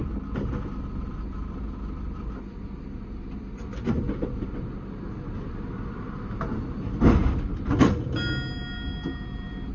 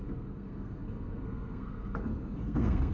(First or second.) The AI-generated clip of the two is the second